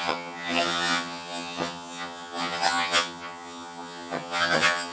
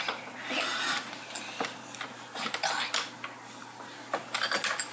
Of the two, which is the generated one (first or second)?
first